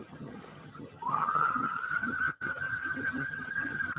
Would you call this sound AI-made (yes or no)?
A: yes